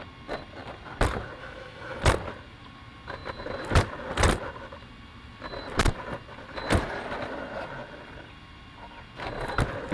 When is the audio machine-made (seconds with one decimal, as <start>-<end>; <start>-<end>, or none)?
1.4-2.0

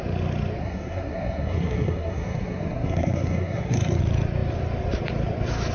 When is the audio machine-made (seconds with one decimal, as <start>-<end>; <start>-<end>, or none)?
0.6-4.0

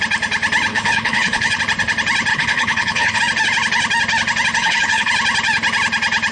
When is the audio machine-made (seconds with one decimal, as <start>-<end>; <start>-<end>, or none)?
0.7-1.6; 2.3-3.2; 4.6-5.1

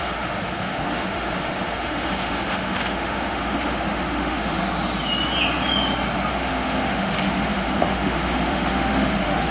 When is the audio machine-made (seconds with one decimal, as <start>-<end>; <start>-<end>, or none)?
0.0-4.6; 6.3-9.5

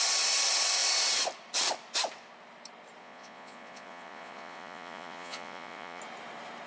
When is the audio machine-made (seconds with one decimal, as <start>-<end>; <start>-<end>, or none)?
3.0-6.0

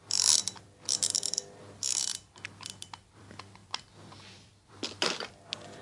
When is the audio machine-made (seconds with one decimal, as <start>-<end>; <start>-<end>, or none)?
3.6-4.1

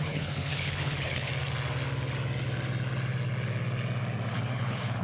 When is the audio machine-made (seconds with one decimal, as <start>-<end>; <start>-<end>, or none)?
0.0-1.3; 4.3-5.0